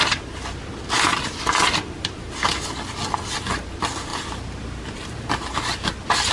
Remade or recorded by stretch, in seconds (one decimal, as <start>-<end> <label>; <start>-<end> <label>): 0.0-1.1 recorded; 1.1-2.2 remade; 2.2-6.3 recorded